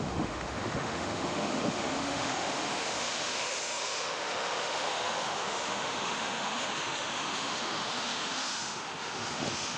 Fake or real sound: fake